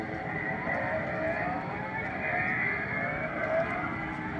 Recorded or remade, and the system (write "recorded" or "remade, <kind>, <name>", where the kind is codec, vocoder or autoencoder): remade, vocoder, BigVGAN v2